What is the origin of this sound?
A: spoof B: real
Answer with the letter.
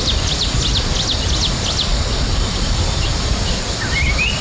B